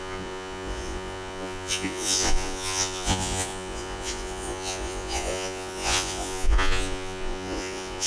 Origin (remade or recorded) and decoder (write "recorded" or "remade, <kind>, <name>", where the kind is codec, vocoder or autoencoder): remade, vocoder, Vocos